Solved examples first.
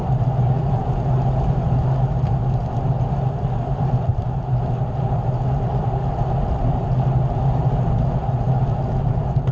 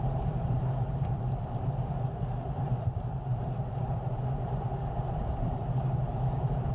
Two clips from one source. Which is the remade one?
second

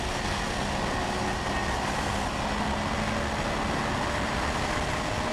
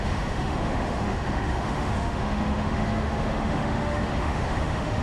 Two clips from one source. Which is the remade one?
second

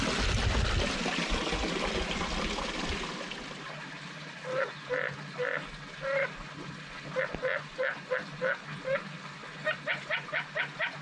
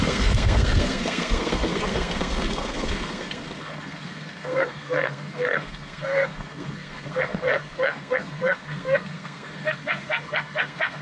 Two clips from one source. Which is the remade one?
second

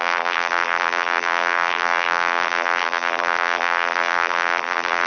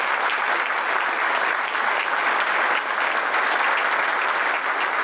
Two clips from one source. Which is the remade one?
first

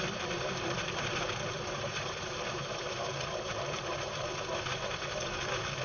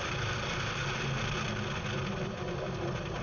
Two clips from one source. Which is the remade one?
first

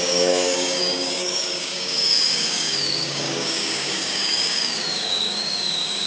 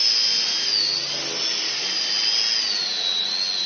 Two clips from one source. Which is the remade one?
first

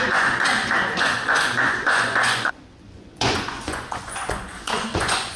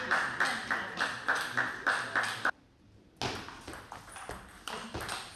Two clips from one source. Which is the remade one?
first